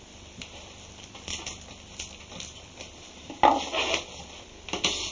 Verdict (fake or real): real